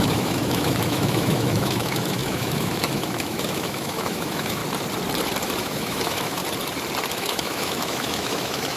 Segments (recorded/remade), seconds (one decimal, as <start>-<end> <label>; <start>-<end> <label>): 0.0-4.6 remade; 4.6-5.6 recorded; 5.6-6.4 remade; 6.4-7.1 recorded; 7.1-8.8 remade